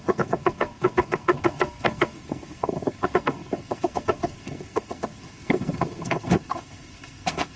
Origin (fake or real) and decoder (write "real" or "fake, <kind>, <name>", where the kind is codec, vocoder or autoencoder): fake, codec, SNAC